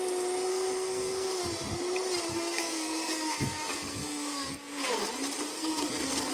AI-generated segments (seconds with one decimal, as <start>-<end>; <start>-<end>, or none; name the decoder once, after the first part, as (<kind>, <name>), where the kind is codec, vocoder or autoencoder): 0.5-1.4 (codec, SNAC); 2.3-5.0; 5.5-6.3